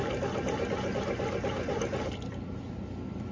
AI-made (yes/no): no